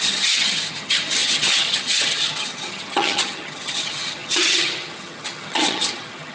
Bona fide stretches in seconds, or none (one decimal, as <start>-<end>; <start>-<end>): none